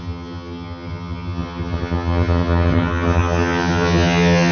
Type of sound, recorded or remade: remade